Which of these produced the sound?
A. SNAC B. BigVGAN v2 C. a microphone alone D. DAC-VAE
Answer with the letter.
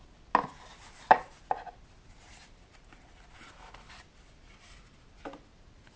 C